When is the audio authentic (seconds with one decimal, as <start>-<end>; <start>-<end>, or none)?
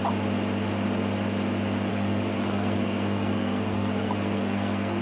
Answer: 0.0-1.9